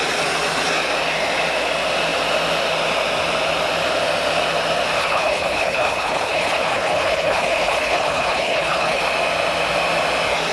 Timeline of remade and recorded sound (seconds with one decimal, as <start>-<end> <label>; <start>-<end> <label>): 0.0-5.0 recorded; 5.0-9.0 remade; 9.0-10.5 recorded